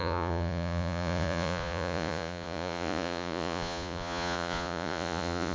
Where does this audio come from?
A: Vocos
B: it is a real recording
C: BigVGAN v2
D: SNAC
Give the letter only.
A